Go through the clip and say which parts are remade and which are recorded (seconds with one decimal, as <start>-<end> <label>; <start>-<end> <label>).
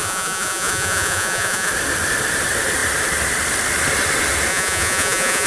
0.0-1.7 remade; 1.7-4.5 recorded; 4.5-5.5 remade